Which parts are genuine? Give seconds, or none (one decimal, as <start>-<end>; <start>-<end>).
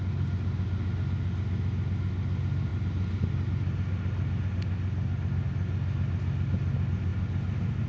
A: 0.0-7.9